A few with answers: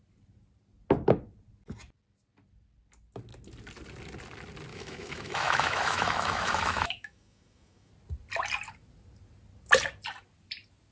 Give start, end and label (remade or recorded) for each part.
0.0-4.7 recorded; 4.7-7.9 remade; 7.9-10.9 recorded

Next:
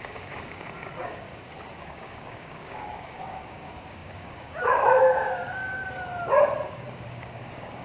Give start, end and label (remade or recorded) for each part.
0.0-1.3 remade; 1.3-1.8 recorded; 1.8-5.8 remade; 5.8-6.7 recorded; 6.7-7.8 remade